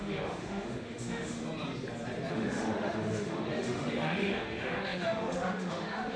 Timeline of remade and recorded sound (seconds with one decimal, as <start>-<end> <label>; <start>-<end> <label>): 0.0-1.4 remade; 1.4-2.3 recorded; 2.3-6.2 remade